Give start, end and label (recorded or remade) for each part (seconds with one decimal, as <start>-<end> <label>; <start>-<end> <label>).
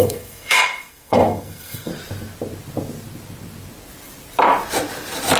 0.0-1.9 remade; 1.9-5.4 recorded